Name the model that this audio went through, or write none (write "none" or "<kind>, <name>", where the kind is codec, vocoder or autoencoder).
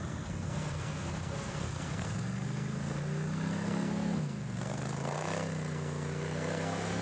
codec, SNAC